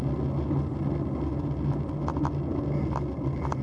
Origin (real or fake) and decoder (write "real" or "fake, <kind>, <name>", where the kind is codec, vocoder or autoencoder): real